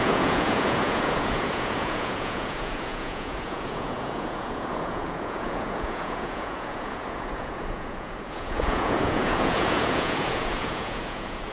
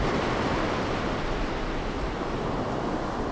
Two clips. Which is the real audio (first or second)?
second